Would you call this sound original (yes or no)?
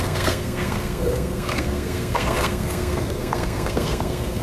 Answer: no